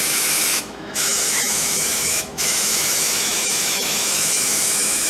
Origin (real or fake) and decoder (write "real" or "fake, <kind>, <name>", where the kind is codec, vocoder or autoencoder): fake, autoencoder, DAC-VAE